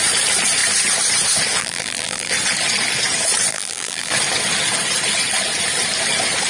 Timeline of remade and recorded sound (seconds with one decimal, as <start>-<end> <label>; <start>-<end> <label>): 0.0-1.6 recorded; 1.6-2.3 remade; 2.3-3.5 recorded; 3.5-4.1 remade; 4.1-6.5 recorded